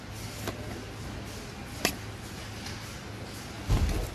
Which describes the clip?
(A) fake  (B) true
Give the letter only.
B